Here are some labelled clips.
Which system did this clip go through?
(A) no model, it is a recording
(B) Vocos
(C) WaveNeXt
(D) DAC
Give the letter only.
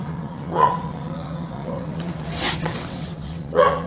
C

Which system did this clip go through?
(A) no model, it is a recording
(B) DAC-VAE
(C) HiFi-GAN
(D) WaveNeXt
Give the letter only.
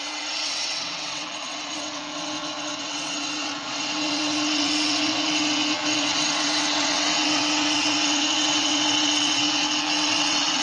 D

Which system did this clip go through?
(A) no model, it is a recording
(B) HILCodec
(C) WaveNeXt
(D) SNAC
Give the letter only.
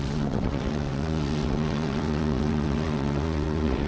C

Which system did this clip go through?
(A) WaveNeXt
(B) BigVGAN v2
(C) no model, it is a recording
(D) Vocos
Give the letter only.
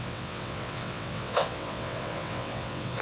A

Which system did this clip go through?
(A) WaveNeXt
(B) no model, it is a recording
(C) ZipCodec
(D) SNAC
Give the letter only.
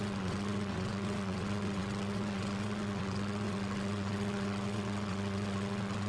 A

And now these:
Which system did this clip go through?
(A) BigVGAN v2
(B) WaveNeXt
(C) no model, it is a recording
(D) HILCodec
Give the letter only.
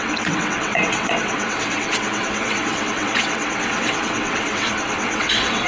B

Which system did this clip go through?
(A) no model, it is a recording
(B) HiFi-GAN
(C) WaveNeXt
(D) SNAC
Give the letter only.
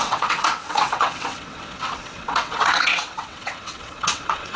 C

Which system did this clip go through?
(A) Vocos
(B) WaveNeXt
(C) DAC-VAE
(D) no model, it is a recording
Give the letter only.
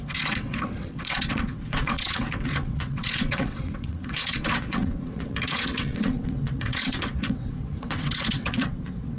B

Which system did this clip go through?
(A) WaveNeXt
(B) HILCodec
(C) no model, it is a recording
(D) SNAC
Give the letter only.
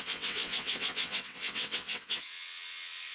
A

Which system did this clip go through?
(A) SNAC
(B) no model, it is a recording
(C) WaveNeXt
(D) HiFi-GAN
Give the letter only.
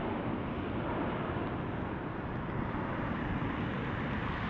B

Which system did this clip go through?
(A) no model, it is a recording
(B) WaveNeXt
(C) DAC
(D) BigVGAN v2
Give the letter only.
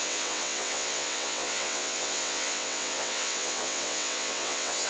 B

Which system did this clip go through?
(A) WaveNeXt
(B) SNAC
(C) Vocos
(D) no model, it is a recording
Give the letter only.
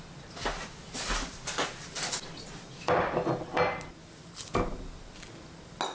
D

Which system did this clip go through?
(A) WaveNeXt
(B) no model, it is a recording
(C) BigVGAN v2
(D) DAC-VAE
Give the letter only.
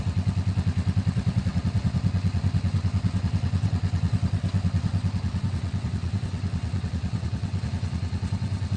A